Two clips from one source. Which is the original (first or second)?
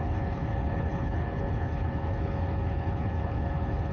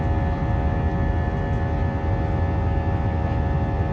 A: second